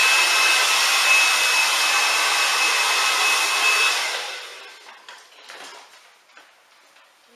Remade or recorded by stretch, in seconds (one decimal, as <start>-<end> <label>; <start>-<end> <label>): 0.0-7.4 recorded